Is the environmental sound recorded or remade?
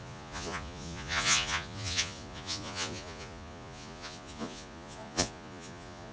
remade